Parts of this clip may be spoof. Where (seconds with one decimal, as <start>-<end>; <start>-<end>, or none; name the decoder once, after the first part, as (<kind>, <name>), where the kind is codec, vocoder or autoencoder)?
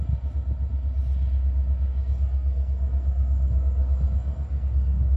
1.9-5.2 (codec, SNAC)